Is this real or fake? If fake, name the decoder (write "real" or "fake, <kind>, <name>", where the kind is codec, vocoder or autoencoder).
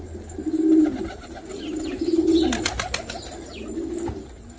real